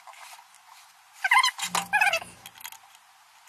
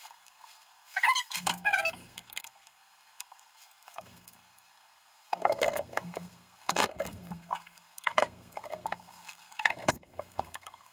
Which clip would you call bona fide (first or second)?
first